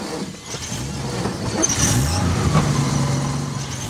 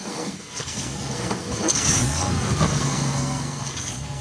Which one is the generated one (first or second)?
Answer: second